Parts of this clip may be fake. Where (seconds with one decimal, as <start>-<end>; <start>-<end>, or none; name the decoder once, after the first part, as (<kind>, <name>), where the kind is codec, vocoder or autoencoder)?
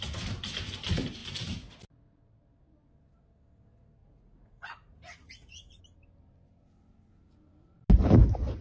4.0-5.8 (vocoder, Vocos)